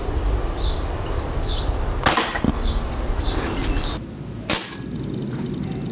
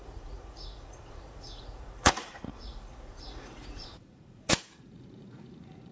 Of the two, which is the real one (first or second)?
first